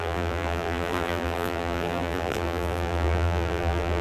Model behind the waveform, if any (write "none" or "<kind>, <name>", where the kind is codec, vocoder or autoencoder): vocoder, BigVGAN v2